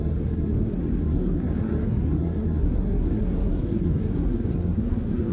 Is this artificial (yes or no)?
yes